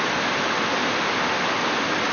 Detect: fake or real real